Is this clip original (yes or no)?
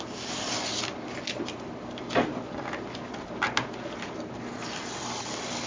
yes